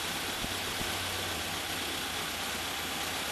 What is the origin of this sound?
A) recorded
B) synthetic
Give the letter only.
A